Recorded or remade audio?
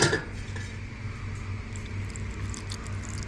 recorded